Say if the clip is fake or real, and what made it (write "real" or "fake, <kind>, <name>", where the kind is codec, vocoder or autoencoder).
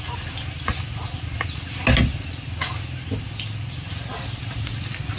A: real